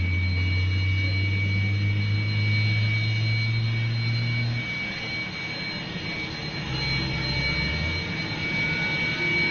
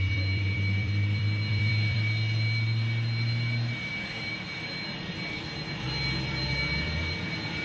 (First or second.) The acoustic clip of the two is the first